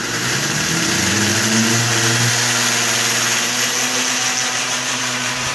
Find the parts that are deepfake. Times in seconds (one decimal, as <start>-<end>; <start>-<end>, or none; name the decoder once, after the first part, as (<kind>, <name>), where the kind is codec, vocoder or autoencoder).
0.0-1.3 (vocoder, BigVGAN v2); 4.6-5.5